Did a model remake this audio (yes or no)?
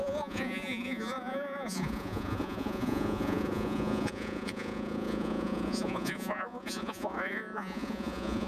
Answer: yes